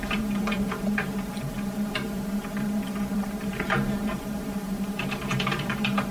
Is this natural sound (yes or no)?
no